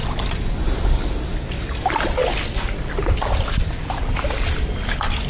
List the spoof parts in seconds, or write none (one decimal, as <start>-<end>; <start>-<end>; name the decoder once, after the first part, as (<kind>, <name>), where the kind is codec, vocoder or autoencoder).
none